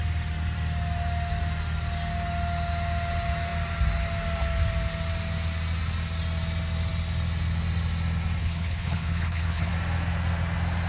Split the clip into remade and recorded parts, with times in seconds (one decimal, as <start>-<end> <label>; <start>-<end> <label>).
0.0-8.4 recorded; 8.4-9.7 remade; 9.7-10.9 recorded